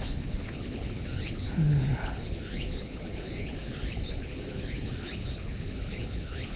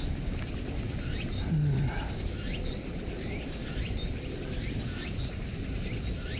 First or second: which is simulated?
first